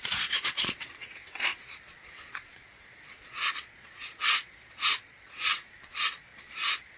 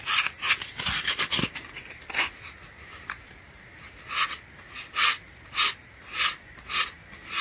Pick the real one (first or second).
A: second